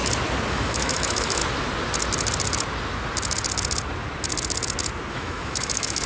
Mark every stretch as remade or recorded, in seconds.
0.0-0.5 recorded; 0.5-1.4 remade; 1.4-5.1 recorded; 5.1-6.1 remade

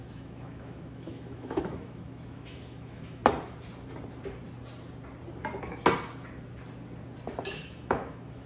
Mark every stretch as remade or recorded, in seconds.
0.0-3.2 remade; 3.2-7.5 recorded; 7.5-8.5 remade